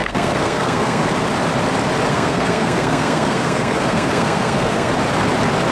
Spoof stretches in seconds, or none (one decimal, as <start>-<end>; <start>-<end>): 0.0-1.0; 2.1-4.9